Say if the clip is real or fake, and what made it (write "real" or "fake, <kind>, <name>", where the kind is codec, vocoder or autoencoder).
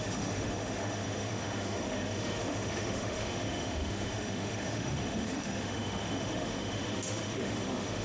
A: fake, autoencoder, DAC-VAE